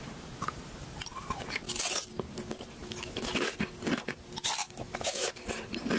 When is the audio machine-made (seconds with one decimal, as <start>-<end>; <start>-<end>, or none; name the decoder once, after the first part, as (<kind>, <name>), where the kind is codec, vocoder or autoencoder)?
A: 2.8-3.3 (autoencoder, DAC-VAE); 4.6-5.3